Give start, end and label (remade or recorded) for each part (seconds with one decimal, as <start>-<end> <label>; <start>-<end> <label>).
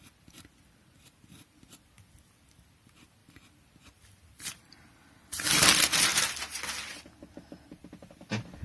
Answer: 0.0-8.6 recorded